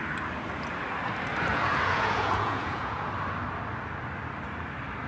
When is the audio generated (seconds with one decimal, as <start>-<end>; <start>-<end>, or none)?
1.5-3.1